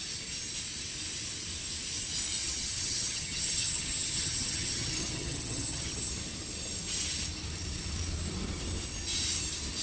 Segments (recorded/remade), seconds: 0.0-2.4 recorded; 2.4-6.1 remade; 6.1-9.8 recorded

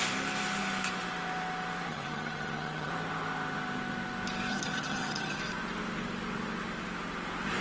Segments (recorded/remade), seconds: 0.0-1.9 recorded; 1.9-2.9 remade; 2.9-4.5 recorded; 4.5-5.4 remade; 5.4-7.6 recorded

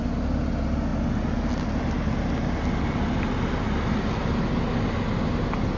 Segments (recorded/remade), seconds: 0.0-5.8 recorded

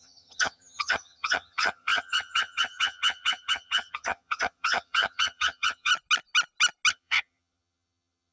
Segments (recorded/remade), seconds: 0.0-5.9 remade; 5.9-6.9 recorded; 6.9-8.3 remade

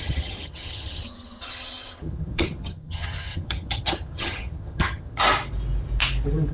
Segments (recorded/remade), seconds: 0.0-5.2 remade; 5.2-6.5 recorded

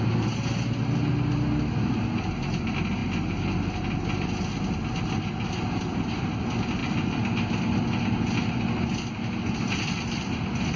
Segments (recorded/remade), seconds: 0.0-10.8 recorded

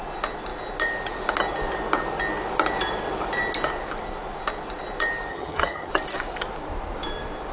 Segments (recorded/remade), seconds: 0.0-5.3 recorded; 5.3-5.9 remade; 5.9-7.5 recorded